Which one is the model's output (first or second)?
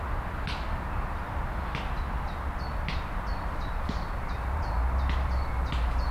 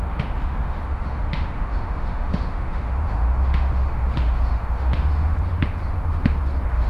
second